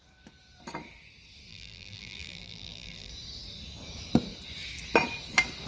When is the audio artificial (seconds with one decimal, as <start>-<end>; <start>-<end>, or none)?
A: 1.5-3.1